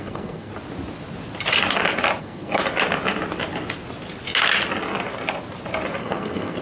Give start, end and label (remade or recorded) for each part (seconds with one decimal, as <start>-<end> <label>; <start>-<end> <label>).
0.0-0.5 remade; 0.5-2.2 recorded; 2.2-2.6 remade; 2.6-6.0 recorded; 6.0-6.6 remade